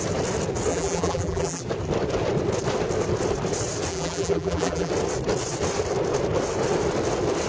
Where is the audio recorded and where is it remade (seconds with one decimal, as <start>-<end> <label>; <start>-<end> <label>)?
0.0-0.7 recorded; 0.7-1.6 remade; 1.6-3.9 recorded; 3.9-4.9 remade; 4.9-7.5 recorded